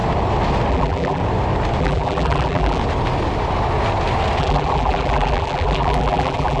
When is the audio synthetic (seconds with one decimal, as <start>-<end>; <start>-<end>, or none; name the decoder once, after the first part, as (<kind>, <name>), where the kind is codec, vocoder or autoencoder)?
0.7-1.2 (vocoder, BigVGAN v2); 1.8-2.8; 4.4-6.6